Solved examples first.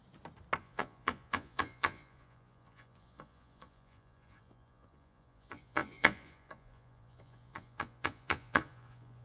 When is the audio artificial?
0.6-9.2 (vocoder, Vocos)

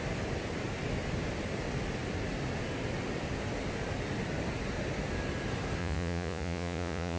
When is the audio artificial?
5.8-7.2 (vocoder, Vocos)